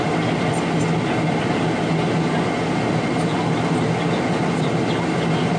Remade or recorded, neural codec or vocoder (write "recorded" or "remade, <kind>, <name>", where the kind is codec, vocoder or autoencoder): recorded